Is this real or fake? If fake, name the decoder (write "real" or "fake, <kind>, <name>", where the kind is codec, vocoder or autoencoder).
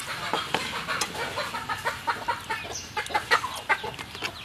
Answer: real